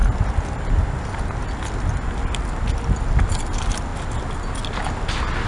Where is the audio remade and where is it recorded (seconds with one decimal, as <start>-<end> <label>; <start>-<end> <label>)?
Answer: 0.0-5.5 recorded